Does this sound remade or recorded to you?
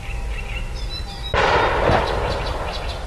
recorded